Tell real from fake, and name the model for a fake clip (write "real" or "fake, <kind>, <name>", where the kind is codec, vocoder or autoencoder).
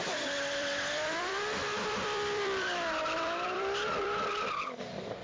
fake, vocoder, BigVGAN v2